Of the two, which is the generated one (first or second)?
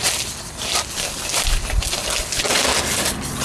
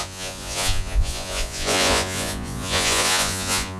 second